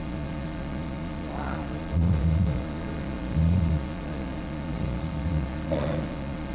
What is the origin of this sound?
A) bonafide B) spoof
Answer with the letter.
B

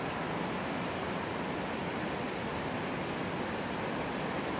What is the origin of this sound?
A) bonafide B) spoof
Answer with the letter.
A